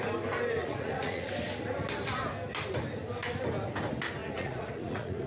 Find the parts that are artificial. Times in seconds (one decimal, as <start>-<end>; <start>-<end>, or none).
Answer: 0.6-1.3; 4.2-5.3